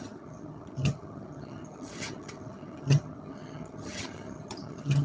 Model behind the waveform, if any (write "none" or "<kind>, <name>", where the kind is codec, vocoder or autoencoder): vocoder, HiFi-GAN